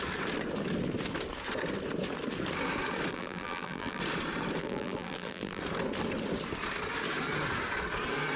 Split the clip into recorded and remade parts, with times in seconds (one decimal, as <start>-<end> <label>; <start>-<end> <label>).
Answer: 0.0-3.1 recorded; 3.1-4.0 remade; 4.0-4.6 recorded; 4.6-5.6 remade; 5.6-8.4 recorded